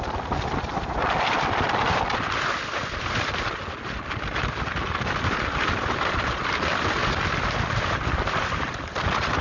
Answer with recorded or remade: recorded